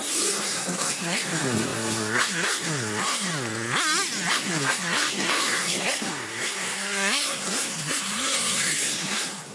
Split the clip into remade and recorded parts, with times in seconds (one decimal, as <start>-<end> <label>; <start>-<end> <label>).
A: 0.0-3.3 remade; 3.3-4.3 recorded; 4.3-9.5 remade